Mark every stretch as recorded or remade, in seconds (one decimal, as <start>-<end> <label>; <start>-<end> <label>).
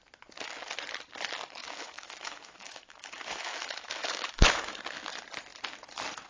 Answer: 0.0-1.6 recorded; 1.6-4.8 remade; 4.8-6.3 recorded